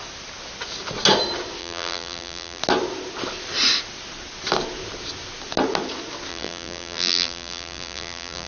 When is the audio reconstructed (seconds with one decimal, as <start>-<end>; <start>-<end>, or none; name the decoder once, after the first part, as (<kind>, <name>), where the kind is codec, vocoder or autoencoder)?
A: 1.6-2.6 (vocoder, BigVGAN v2); 6.3-8.5